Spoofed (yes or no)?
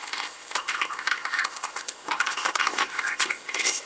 yes